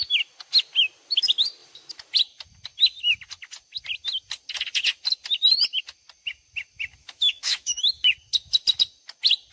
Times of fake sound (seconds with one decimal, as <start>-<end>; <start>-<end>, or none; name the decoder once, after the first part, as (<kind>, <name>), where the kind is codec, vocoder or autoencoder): 7.0-8.0 (autoencoder, DAC-VAE)